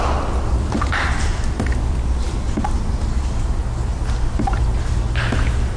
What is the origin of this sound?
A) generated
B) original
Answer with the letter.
B